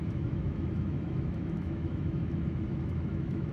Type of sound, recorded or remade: remade